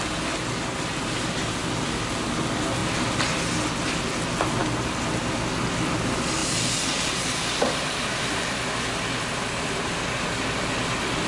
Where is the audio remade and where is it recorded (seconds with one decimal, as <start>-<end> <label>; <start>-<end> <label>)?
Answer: 0.0-11.3 recorded